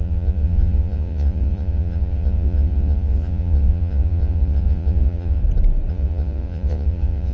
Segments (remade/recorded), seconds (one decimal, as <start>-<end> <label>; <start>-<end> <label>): 0.0-5.4 remade; 5.4-5.9 recorded; 5.9-7.3 remade